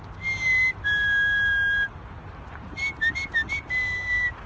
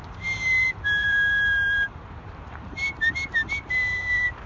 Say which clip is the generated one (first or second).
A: second